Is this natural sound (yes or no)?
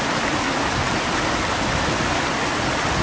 yes